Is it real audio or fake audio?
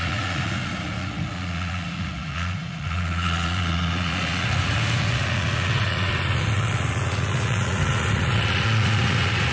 fake